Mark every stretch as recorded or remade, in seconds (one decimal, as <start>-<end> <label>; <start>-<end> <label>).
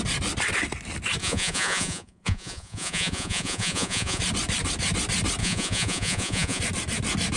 0.0-1.2 recorded; 1.2-4.2 remade; 4.2-5.4 recorded; 5.4-6.6 remade; 6.6-7.4 recorded